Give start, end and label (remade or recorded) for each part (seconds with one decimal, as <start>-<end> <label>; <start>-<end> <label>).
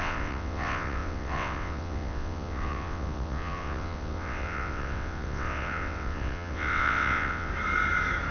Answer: 0.0-7.5 remade; 7.5-8.3 recorded